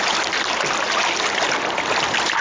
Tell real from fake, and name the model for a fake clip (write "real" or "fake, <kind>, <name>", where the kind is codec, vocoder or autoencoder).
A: real